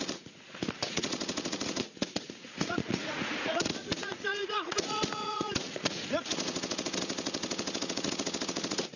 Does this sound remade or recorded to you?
remade